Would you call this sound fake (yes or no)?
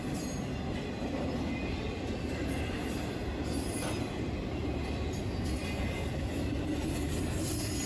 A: no